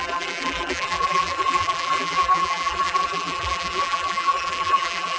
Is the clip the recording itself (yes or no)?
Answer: no